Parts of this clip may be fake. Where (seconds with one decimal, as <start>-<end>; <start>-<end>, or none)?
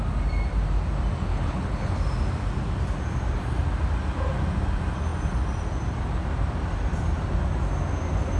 1.3-2.0